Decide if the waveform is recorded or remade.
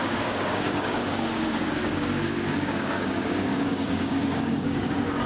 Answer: remade